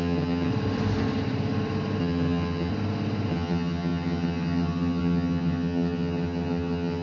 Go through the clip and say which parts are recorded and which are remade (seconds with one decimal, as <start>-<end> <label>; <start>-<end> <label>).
0.0-0.5 remade; 0.5-2.0 recorded; 2.0-2.7 remade; 2.7-3.3 recorded; 3.3-7.0 remade